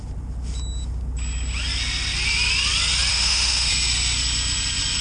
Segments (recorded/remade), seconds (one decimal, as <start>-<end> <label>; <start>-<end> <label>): 0.0-3.1 recorded; 3.1-3.7 remade; 3.7-5.0 recorded